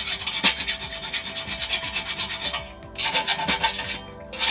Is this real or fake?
real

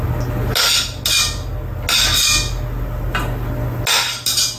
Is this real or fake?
real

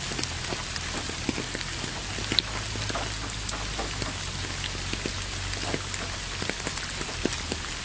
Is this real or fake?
real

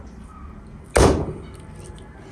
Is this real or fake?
real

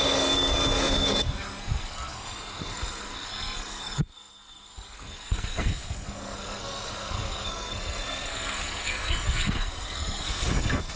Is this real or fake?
fake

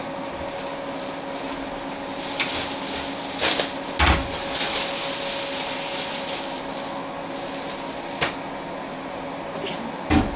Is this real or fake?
real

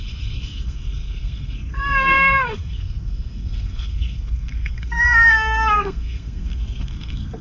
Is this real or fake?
fake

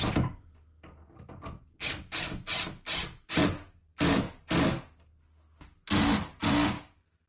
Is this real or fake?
real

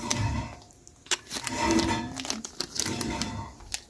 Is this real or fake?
real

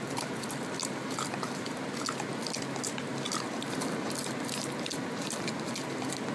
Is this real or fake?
real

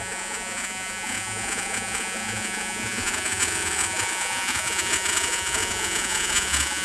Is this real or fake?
fake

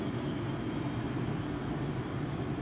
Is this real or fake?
real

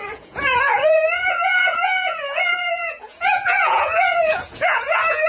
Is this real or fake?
fake